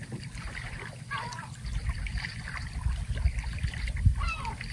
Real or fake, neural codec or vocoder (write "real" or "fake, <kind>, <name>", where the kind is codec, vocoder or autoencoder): fake, vocoder, BigVGAN v2